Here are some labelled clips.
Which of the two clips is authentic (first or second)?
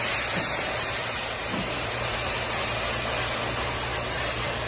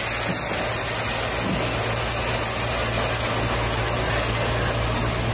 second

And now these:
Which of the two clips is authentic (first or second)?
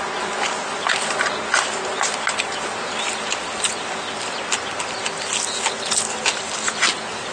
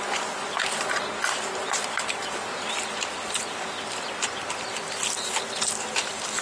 first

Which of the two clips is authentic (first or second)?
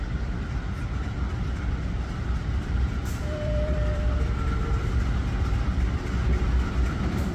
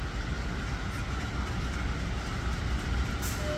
second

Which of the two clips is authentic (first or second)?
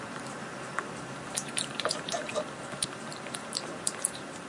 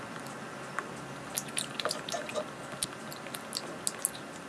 second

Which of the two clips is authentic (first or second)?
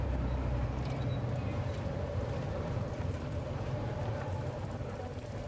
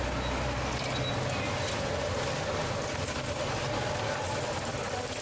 second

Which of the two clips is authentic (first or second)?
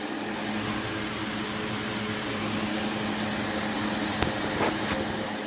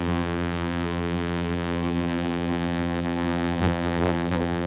first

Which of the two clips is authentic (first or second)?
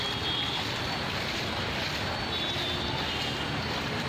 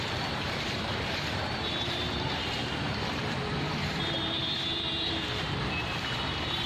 first